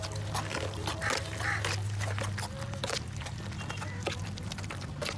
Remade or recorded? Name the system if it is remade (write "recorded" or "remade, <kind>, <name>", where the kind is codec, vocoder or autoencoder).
recorded